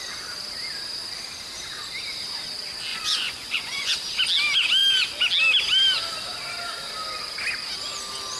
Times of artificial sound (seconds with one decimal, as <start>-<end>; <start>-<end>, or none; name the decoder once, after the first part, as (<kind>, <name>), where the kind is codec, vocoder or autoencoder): 2.9-3.9 (vocoder, Vocos)